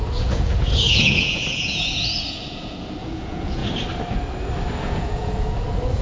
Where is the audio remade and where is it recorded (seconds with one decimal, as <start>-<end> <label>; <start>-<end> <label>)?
0.0-3.6 remade; 3.6-4.8 recorded; 4.8-6.0 remade